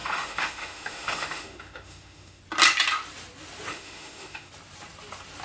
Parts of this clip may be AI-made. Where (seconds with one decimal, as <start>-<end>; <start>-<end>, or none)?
0.0-2.4; 3.7-4.5